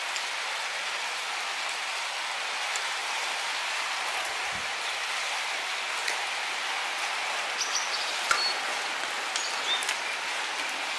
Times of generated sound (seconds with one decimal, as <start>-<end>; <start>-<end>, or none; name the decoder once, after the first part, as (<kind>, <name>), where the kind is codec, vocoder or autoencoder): none